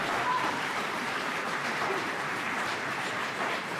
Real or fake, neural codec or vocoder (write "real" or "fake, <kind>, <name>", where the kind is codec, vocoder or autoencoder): fake, vocoder, BigVGAN v2